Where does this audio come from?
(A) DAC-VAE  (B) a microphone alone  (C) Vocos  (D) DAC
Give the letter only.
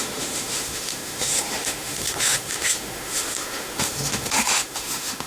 A